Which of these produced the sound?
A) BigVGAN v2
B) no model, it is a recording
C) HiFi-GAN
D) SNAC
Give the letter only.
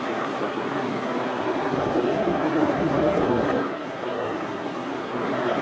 D